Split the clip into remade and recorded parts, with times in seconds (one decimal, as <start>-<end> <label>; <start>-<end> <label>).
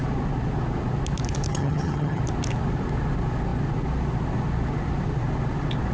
0.0-1.5 recorded; 1.5-2.2 remade; 2.2-5.9 recorded